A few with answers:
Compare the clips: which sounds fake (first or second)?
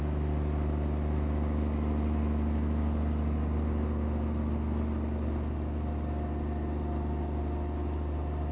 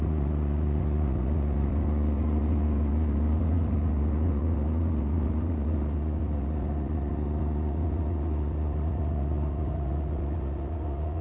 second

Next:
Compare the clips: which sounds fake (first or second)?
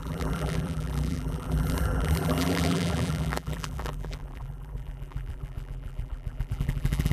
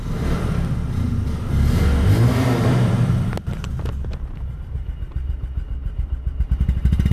first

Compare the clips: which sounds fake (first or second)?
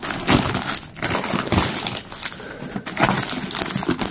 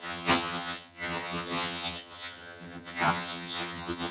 second